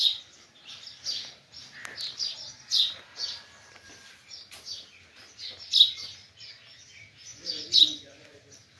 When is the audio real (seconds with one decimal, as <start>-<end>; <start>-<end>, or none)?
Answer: 0.0-7.3; 8.4-8.8